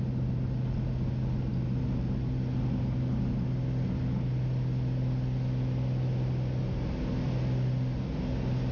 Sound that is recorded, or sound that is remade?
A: recorded